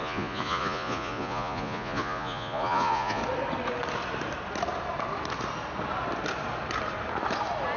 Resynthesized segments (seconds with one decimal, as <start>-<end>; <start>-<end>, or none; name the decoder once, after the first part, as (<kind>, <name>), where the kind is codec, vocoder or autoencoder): 0.0-3.2 (vocoder, Vocos)

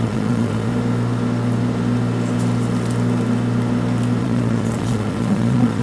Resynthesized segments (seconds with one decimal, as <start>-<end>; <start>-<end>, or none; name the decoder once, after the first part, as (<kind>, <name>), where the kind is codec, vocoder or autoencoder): 0.0-0.7 (vocoder, Vocos); 4.2-5.8

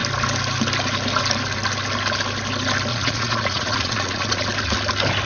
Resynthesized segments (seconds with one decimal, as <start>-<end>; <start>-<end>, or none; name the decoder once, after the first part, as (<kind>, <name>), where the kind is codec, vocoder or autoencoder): 2.9-4.4 (vocoder, Vocos)